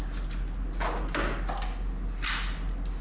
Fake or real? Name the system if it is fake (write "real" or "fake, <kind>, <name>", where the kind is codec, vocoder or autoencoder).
real